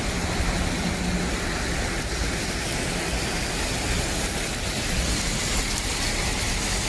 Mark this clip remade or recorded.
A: recorded